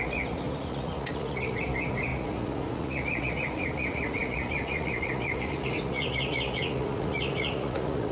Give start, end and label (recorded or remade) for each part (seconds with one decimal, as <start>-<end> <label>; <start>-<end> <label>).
0.0-8.1 remade